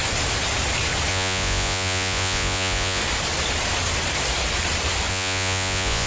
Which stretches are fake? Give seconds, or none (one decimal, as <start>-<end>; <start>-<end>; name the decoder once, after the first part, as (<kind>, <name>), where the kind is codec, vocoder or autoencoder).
1.1-3.0 (vocoder, Vocos); 5.1-6.1